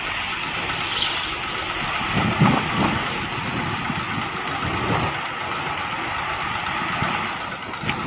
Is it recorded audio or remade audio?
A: recorded